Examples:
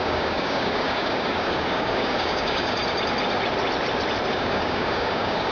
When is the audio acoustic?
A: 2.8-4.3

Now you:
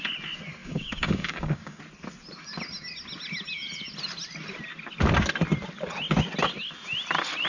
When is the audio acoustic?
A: 0.0-0.6; 1.8-7.5

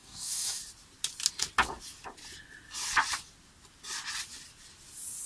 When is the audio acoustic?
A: 0.6-5.3